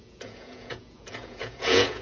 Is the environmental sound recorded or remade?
remade